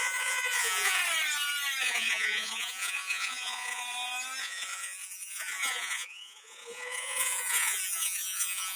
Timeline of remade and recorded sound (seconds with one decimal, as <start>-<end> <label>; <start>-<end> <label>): 0.0-1.0 remade; 1.0-1.8 recorded; 1.8-3.8 remade; 3.8-4.4 recorded; 4.4-8.8 remade